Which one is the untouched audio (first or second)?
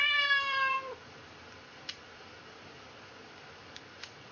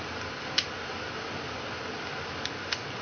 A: second